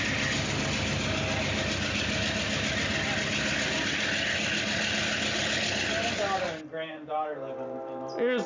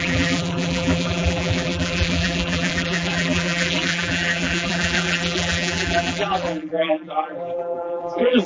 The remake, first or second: second